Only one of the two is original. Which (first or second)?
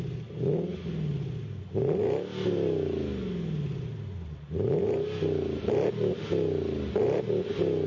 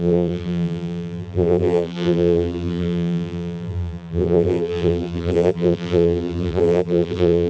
first